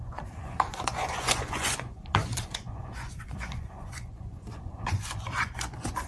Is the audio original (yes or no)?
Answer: no